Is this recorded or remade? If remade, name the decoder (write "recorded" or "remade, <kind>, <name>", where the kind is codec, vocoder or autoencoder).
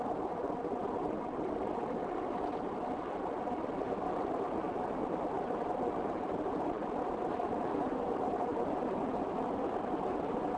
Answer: recorded